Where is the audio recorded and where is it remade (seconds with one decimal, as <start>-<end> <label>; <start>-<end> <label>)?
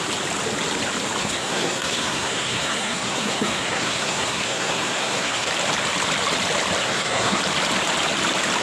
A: 0.0-1.2 recorded; 1.2-5.5 remade; 5.5-6.8 recorded; 6.8-7.4 remade; 7.4-8.6 recorded